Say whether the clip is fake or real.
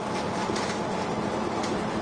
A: real